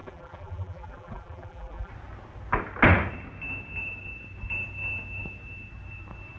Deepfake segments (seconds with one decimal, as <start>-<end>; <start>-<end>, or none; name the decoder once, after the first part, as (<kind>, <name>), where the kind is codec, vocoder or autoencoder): 0.0-1.9 (vocoder, BigVGAN v2)